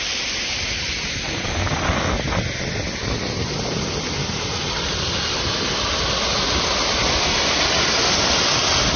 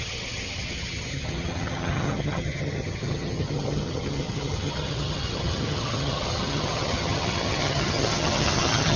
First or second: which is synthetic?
second